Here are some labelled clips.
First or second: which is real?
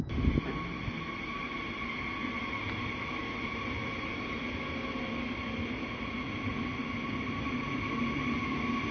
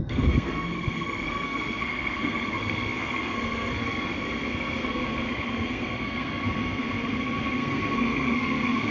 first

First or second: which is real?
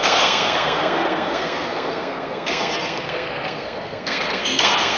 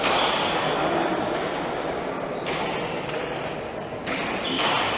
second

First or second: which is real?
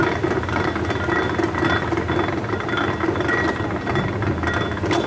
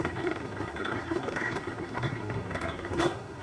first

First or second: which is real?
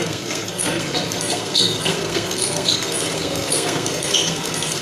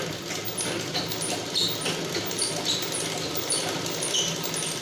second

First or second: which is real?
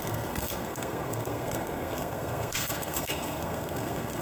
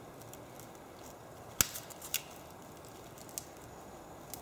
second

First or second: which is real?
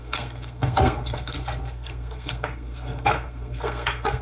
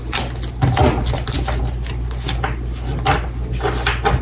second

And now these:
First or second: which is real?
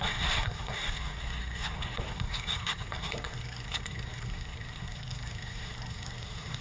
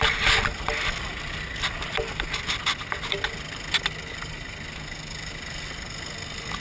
second